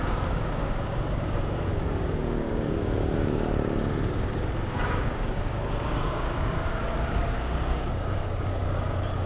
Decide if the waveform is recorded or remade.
remade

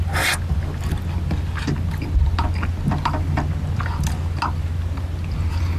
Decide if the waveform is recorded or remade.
recorded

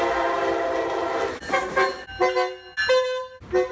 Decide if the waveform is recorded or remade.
recorded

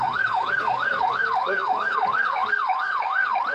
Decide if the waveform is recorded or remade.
remade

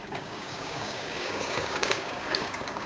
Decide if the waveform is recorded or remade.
remade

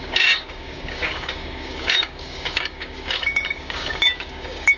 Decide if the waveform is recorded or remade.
remade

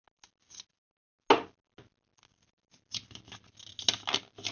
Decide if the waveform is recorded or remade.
recorded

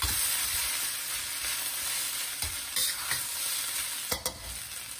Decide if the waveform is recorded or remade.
recorded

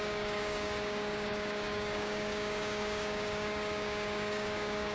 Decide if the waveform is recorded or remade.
remade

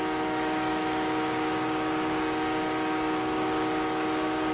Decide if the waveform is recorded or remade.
remade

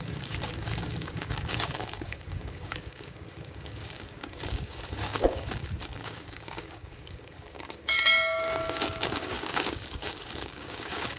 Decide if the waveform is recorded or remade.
remade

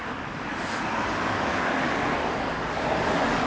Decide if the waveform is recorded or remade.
remade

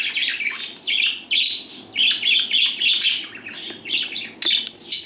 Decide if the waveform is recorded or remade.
recorded